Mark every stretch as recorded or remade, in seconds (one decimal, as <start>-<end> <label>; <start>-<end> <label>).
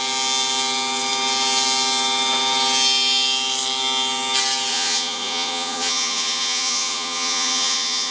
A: 0.0-4.7 recorded; 4.7-8.1 remade